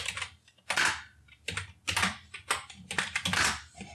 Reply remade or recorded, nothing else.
recorded